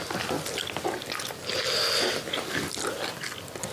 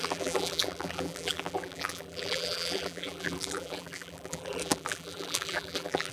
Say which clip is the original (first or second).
first